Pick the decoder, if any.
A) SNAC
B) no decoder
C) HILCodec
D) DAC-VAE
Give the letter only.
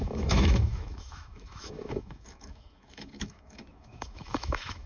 D